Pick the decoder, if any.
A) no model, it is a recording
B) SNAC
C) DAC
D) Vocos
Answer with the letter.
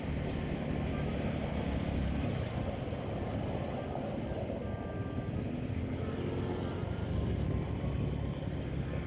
A